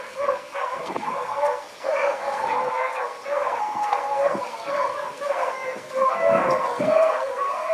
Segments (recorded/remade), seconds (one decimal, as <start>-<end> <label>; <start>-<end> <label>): 0.0-7.7 remade